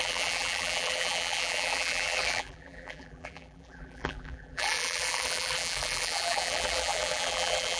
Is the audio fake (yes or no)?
yes